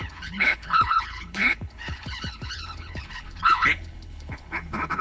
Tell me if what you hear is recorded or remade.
remade